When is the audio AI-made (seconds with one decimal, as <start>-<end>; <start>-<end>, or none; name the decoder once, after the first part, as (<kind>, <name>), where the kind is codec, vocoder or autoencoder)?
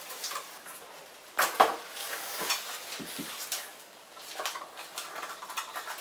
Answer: 2.0-2.5 (codec, DAC); 3.7-4.2